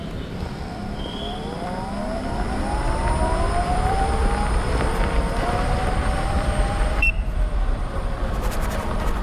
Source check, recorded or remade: remade